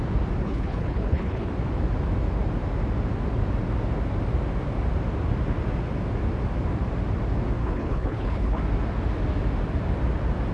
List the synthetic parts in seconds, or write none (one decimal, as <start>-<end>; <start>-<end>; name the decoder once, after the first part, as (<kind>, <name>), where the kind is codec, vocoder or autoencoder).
0.4-1.5 (codec, HILCodec); 7.6-8.6